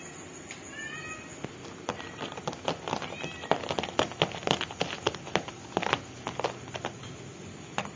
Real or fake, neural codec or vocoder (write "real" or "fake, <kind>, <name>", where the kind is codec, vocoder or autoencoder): real